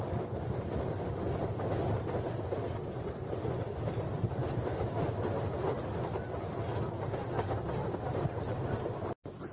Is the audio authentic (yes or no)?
yes